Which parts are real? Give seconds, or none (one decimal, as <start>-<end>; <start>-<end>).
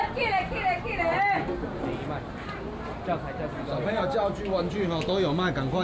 0.0-5.8